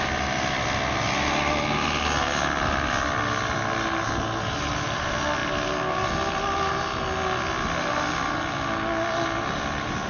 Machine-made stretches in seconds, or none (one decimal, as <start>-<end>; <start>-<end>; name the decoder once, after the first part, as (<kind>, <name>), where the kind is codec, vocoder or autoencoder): none